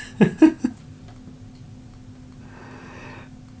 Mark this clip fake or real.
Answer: real